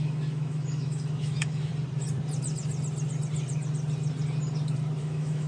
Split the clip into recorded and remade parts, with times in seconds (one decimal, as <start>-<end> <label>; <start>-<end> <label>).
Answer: 0.0-1.7 remade; 1.7-5.0 recorded; 5.0-5.5 remade